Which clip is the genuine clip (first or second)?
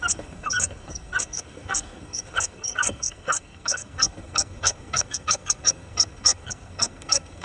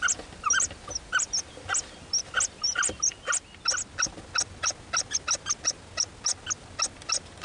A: second